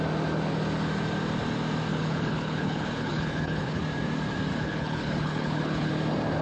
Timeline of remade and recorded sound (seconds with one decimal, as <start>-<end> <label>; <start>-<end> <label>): 0.0-1.9 recorded; 1.9-3.8 remade; 3.8-4.5 recorded; 4.5-5.9 remade; 5.9-6.4 recorded